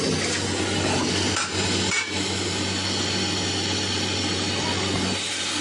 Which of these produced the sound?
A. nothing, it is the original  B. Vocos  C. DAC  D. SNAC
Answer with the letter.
A